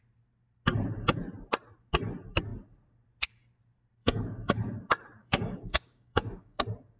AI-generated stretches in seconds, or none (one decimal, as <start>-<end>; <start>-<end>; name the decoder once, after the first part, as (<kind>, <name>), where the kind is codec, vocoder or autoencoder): 4.0-4.8 (codec, DAC); 5.2-6.6